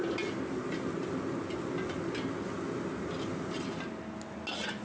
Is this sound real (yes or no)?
yes